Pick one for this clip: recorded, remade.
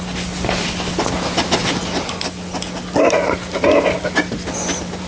recorded